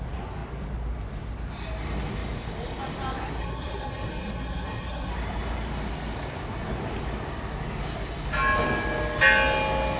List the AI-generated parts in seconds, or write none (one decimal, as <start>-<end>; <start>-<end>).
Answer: 3.4-5.1